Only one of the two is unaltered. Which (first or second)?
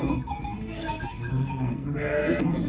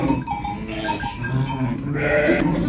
second